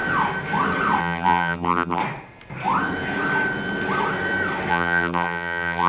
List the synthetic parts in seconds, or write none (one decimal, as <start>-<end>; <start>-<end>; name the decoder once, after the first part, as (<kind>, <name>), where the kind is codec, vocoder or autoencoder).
1.0-2.0 (vocoder, BigVGAN v2); 4.7-5.9